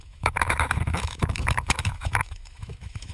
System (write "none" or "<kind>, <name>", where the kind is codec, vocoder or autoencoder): autoencoder, DAC-VAE